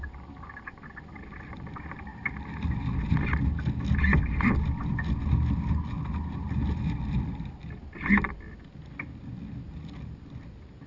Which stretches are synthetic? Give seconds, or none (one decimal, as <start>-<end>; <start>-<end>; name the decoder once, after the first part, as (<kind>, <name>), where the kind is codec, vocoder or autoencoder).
none